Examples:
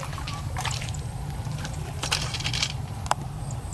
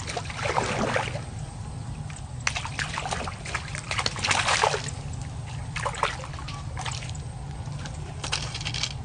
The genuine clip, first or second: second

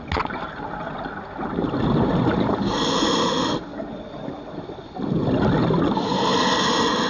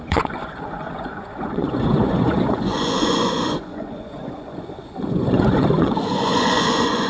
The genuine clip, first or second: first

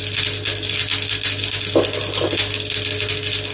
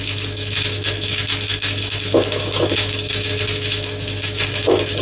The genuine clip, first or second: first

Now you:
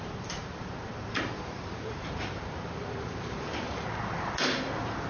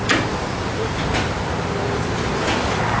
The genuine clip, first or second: second